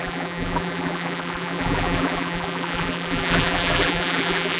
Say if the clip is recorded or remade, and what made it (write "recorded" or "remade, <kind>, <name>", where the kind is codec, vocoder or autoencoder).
remade, vocoder, BigVGAN v2